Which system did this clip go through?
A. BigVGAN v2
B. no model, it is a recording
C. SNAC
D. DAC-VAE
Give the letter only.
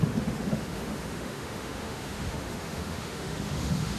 D